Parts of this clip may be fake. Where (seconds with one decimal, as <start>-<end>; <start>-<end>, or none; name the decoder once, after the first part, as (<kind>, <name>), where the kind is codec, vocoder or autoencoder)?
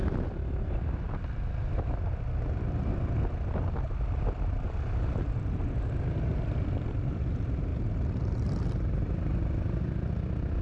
0.0-7.7 (vocoder, BigVGAN v2); 8.2-10.6